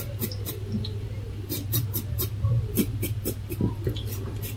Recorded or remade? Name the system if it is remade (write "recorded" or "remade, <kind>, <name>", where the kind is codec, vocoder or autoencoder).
remade, vocoder, BigVGAN v2